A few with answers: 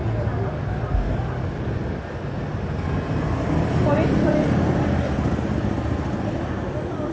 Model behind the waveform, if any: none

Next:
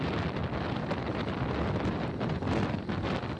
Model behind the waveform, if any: none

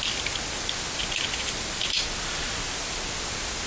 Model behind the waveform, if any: none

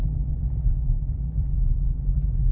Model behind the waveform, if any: vocoder, BigVGAN v2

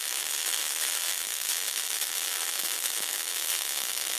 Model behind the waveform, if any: autoencoder, DAC-VAE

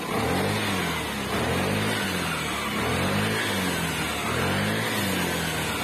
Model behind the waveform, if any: none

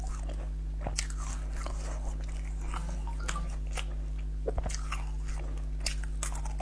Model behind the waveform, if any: none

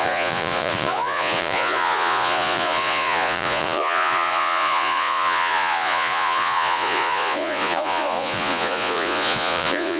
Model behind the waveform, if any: vocoder, Vocos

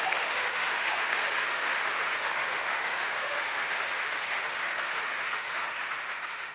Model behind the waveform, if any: autoencoder, DAC-VAE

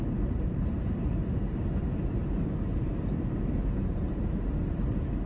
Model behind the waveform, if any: vocoder, BigVGAN v2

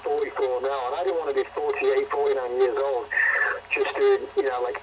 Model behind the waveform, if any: none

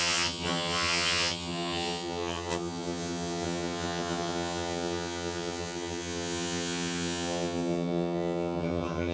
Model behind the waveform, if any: vocoder, HiFi-GAN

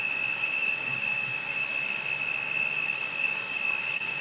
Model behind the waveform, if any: codec, DAC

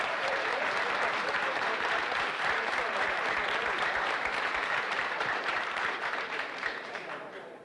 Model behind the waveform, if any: vocoder, BigVGAN v2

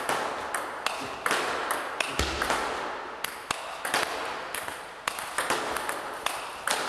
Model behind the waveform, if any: none